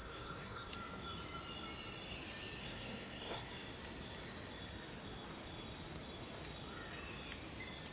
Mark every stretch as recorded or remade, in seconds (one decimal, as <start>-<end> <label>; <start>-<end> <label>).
0.0-0.7 remade; 0.7-2.6 recorded; 2.6-3.5 remade; 3.5-7.9 recorded